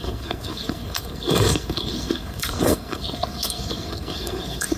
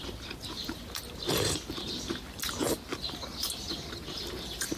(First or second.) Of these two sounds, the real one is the second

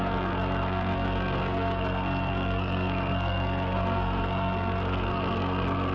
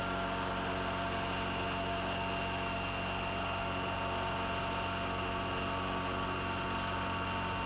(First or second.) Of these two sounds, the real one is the second